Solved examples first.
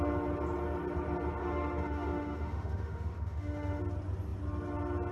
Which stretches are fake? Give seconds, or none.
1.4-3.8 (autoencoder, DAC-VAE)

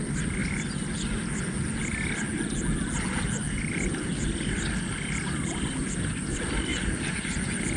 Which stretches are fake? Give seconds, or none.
none

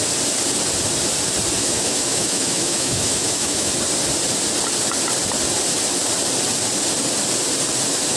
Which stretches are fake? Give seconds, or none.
1.6-3.7 (autoencoder, DAC-VAE)